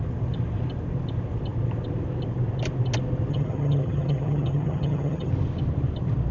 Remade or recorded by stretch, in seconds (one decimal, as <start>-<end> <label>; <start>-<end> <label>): 0.0-3.3 recorded; 3.3-5.3 remade; 5.3-6.3 recorded